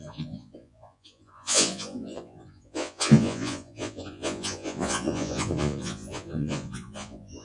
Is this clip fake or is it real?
fake